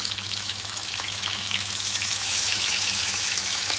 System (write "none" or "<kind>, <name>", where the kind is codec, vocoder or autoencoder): autoencoder, DAC-VAE